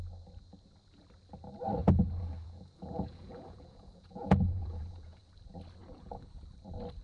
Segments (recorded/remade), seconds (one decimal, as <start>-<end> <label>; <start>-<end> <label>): 0.0-1.8 recorded; 1.8-5.2 remade; 5.2-5.8 recorded; 5.8-6.3 remade; 6.3-7.0 recorded

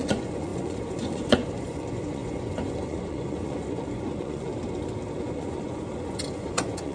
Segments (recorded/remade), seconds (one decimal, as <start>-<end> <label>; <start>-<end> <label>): 0.0-4.5 remade; 4.5-5.2 recorded; 5.2-6.9 remade

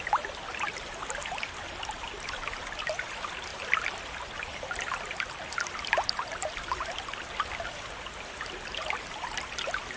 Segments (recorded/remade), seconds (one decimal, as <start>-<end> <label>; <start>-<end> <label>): 0.0-10.0 recorded

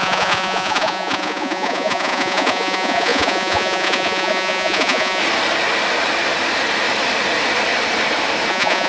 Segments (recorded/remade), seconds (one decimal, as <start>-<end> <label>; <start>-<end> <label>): 0.0-5.2 remade; 5.2-8.5 recorded; 8.5-8.9 remade

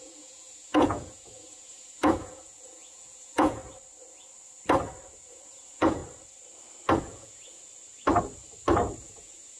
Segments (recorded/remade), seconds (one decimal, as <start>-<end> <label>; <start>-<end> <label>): 0.0-3.6 remade; 3.6-5.3 recorded; 5.3-6.0 remade; 6.0-7.0 recorded; 7.0-7.6 remade; 7.6-9.0 recorded; 9.0-9.6 remade